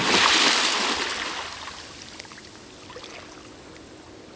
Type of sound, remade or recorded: recorded